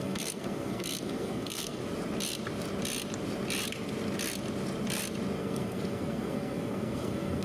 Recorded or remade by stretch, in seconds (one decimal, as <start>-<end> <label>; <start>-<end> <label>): 0.0-1.8 remade; 1.8-5.4 recorded; 5.4-7.4 remade